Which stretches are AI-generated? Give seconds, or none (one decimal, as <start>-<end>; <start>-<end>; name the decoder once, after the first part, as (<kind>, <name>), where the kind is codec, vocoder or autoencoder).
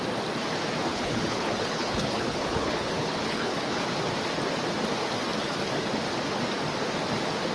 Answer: 0.9-3.9 (codec, HILCodec)